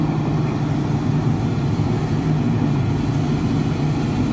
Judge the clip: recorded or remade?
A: recorded